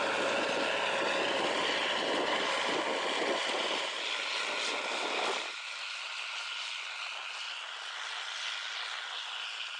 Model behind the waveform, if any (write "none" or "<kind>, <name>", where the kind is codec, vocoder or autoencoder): none